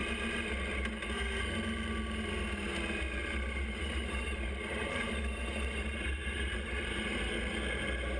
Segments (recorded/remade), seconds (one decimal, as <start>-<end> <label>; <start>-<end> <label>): 0.0-3.2 recorded; 3.2-7.3 remade; 7.3-8.2 recorded

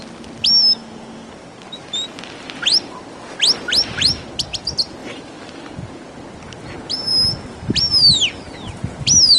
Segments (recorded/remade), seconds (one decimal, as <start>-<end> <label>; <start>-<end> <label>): 0.0-5.0 recorded; 5.0-5.6 remade; 5.6-9.4 recorded

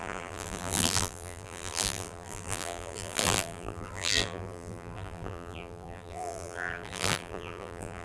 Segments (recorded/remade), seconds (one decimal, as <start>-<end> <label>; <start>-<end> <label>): 0.0-8.0 remade